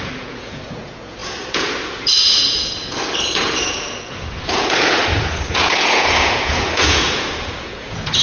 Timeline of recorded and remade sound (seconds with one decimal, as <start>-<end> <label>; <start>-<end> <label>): 0.0-8.2 remade